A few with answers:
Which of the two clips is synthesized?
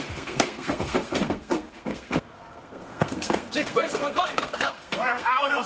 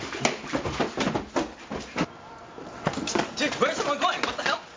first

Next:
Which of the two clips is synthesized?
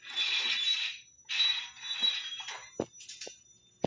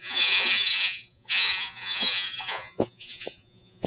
second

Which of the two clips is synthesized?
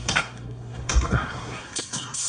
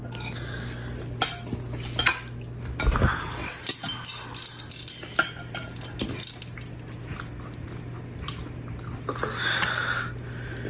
first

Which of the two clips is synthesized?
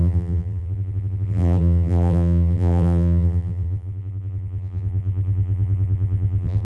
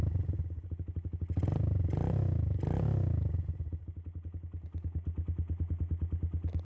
first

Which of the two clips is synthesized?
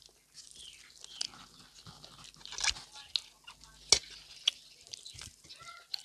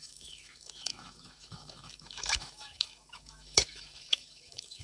second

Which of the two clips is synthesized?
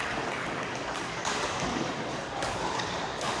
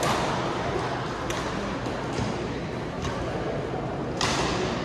first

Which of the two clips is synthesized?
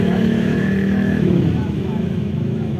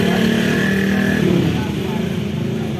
first